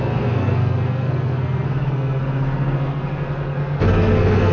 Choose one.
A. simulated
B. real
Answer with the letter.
A